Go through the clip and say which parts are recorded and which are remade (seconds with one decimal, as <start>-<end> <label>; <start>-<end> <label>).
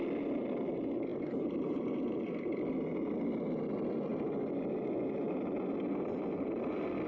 0.0-1.1 recorded; 1.1-1.9 remade; 1.9-7.1 recorded